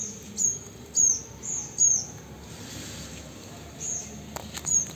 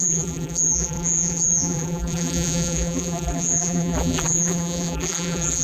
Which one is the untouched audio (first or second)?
first